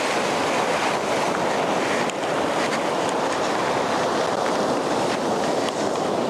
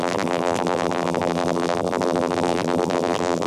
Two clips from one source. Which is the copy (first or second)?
second